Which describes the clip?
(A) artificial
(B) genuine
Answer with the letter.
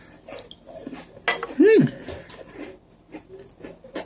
B